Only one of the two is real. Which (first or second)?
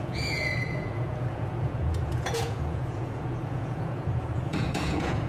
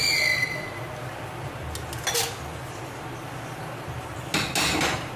second